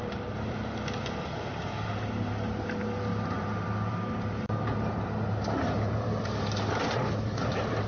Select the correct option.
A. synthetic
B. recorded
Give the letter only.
A